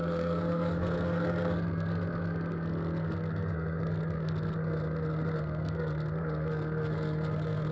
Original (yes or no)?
no